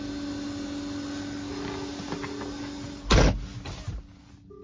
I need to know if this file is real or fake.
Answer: real